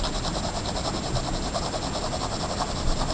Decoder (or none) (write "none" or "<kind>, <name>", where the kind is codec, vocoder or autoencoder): none